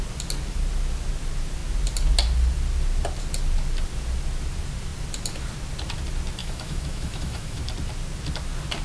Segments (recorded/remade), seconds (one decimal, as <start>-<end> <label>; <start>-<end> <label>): 0.0-6.4 recorded; 6.4-7.6 remade; 7.6-8.8 recorded